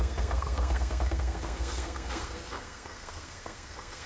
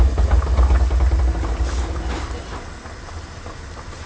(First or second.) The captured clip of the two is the second